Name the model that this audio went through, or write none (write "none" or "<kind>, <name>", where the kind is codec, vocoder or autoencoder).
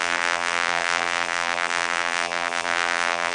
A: vocoder, BigVGAN v2